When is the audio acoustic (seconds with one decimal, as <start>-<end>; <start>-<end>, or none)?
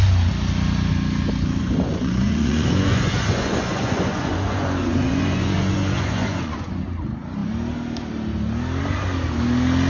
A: 0.0-1.6; 6.8-9.9